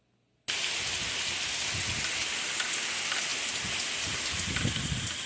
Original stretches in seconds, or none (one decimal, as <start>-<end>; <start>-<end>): 0.0-5.3